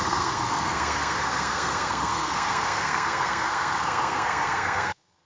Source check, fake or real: fake